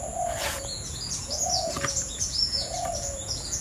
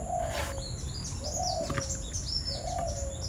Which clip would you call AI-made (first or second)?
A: first